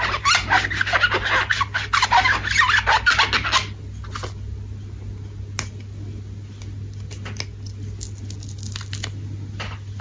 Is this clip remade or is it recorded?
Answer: recorded